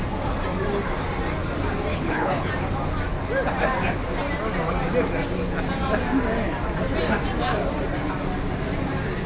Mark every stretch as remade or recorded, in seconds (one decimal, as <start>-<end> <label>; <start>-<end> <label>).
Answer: 0.0-1.9 recorded; 1.9-2.5 remade; 2.5-9.3 recorded

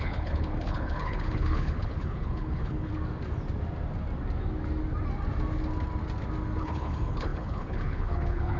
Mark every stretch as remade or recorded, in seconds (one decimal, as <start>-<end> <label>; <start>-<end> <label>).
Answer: 0.0-2.9 remade; 2.9-6.6 recorded; 6.6-8.6 remade

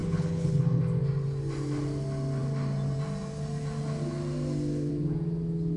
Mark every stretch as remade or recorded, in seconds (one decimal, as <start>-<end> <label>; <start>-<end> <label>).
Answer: 0.0-0.8 remade; 0.8-5.8 recorded

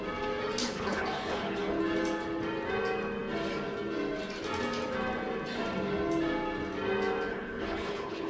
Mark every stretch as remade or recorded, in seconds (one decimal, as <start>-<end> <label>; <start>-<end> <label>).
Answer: 0.0-0.6 recorded; 0.6-1.8 remade; 1.8-7.3 recorded; 7.3-8.3 remade